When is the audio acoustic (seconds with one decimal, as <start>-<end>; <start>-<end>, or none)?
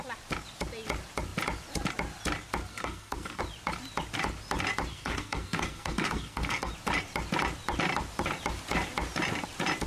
0.0-2.7; 3.4-4.9; 6.7-9.9